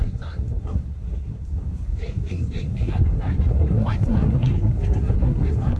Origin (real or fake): fake